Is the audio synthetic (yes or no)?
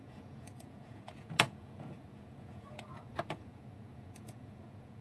yes